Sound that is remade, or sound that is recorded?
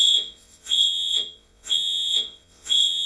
remade